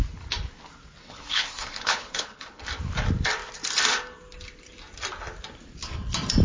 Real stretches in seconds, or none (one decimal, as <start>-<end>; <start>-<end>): 0.0-1.0; 2.6-6.4

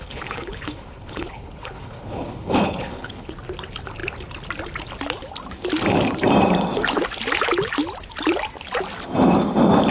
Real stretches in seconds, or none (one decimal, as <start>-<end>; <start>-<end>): 3.3-9.9

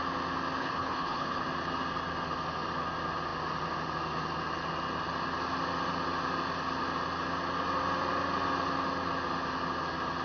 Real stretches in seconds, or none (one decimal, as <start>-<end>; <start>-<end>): 0.0-0.6; 1.4-10.2

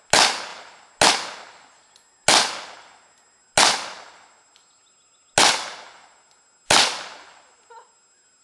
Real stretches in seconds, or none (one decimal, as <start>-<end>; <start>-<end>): 0.0-8.4

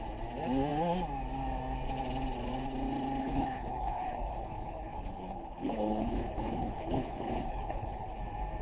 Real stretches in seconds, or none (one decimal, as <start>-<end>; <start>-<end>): 0.0-3.2; 8.2-8.6

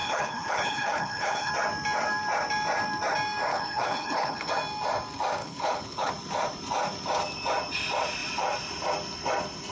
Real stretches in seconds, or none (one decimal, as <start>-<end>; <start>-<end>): 1.5-3.5; 4.5-5.4; 6.1-9.7